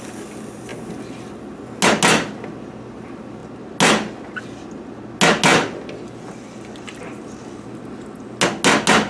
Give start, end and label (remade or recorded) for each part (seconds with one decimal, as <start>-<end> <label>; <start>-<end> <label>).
0.0-9.1 recorded